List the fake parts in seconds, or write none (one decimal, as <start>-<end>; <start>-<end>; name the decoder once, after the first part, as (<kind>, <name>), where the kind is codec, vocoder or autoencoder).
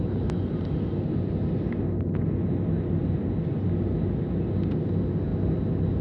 none